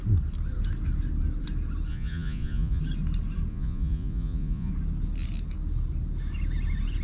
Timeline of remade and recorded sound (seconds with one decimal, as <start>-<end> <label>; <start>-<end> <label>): 0.0-1.9 recorded; 1.9-2.8 remade; 2.8-3.5 recorded; 3.5-4.7 remade; 4.7-7.0 recorded